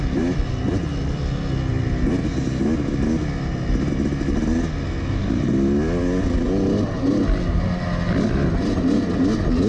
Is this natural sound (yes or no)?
yes